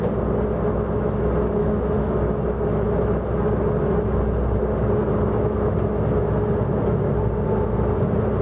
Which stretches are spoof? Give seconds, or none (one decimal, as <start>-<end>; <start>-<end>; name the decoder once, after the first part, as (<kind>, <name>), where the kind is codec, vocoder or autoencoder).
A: 1.6-2.1 (autoencoder, DAC-VAE)